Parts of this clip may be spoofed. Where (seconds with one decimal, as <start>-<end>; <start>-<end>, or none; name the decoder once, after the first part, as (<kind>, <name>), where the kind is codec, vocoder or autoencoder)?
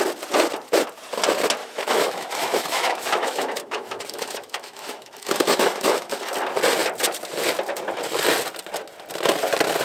1.6-6.2 (autoencoder, DAC-VAE)